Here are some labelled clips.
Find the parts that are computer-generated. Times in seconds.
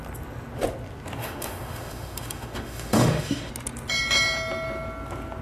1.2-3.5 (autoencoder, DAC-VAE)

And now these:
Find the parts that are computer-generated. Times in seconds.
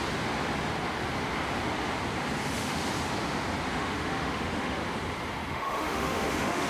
2.4-2.8 (autoencoder, DAC-VAE); 3.7-4.8; 5.5-6.7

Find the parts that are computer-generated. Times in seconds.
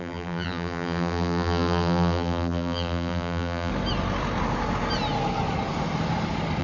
0.0-3.7 (vocoder, BigVGAN v2)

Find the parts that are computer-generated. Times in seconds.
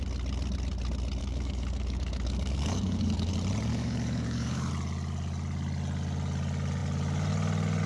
1.2-3.3 (codec, DAC); 3.7-4.7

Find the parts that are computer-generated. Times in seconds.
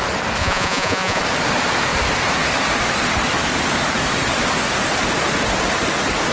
0.4-1.2 (vocoder, Vocos)